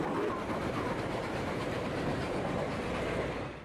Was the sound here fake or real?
fake